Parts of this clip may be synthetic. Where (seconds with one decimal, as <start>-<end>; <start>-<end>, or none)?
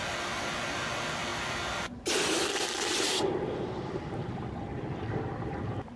none